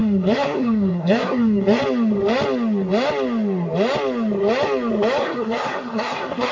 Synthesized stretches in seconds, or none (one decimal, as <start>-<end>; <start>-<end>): 0.0-1.8; 5.2-6.5

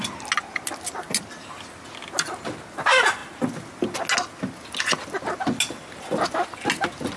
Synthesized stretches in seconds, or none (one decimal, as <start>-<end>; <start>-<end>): none

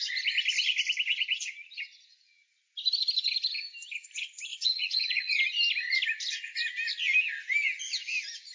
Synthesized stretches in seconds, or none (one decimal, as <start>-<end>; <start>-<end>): 1.1-2.6; 4.5-5.3

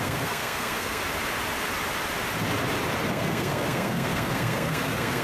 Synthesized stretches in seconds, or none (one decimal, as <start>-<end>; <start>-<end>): 0.0-1.0; 3.1-5.2

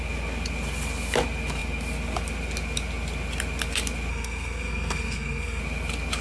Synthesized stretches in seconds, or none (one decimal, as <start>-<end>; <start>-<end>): 4.1-5.6